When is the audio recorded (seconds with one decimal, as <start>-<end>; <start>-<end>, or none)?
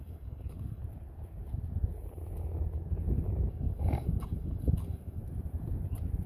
0.8-3.5; 5.2-6.3